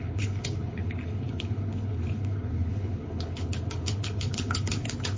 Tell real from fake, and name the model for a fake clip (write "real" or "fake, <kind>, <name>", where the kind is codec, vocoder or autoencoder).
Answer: fake, codec, HILCodec